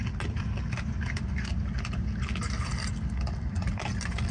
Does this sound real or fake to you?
real